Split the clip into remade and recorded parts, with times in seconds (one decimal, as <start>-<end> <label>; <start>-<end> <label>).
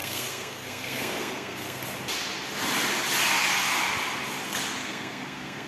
0.0-1.8 remade; 1.8-4.8 recorded; 4.8-5.7 remade